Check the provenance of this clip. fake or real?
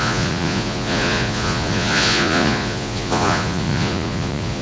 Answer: fake